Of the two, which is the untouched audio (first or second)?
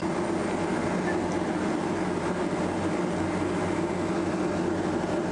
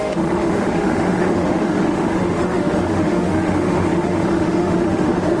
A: first